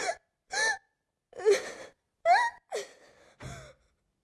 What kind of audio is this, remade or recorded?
recorded